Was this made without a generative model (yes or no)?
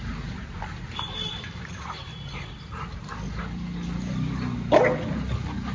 yes